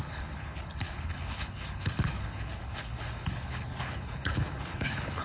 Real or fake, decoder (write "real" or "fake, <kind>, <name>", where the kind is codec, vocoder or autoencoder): fake, codec, HILCodec